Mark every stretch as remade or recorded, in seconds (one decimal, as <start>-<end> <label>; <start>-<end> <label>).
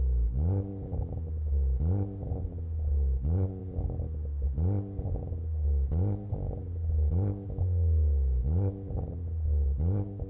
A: 0.0-10.3 recorded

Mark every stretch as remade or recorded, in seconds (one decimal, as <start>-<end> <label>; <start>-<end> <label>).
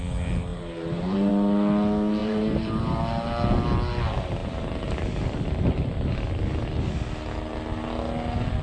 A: 0.0-0.5 recorded; 0.5-1.3 remade; 1.3-2.2 recorded; 2.2-3.0 remade; 3.0-8.6 recorded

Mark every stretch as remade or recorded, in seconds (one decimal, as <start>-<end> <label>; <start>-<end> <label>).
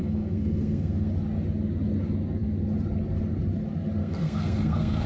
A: 0.0-1.1 remade; 1.1-4.0 recorded; 4.0-5.1 remade